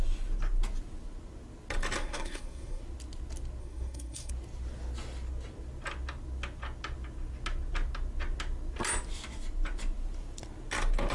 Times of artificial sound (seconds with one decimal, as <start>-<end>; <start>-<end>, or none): 2.0-2.8; 3.6-4.3